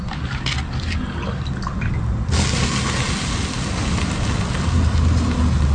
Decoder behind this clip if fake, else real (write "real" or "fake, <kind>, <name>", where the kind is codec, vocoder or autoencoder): real